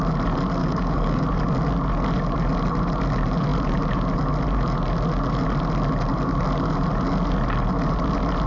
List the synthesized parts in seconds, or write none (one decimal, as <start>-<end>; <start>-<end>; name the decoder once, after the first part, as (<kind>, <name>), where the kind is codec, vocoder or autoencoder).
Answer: 0.6-1.2 (codec, DAC)